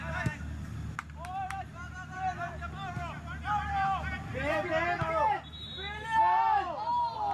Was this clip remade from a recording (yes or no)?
no